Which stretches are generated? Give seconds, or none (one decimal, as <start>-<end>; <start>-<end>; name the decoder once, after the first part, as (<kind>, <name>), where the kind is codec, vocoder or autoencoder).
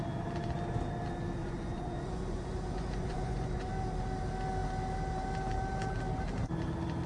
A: 1.4-3.7 (vocoder, Vocos)